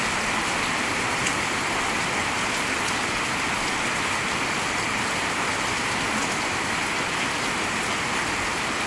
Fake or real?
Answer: real